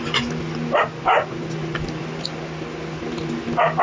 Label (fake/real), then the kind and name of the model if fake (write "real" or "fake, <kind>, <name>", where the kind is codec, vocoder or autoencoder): real